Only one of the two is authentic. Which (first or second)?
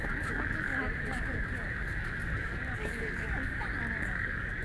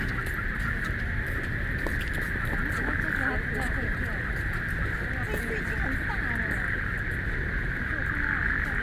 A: second